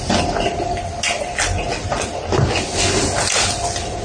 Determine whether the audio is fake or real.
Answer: real